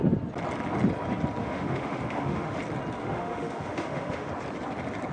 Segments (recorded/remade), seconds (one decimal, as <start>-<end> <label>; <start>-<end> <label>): 0.0-1.4 recorded; 1.4-2.6 remade; 2.6-3.0 recorded; 3.0-4.3 remade; 4.3-5.1 recorded